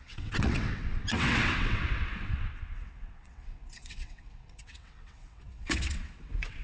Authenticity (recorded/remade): remade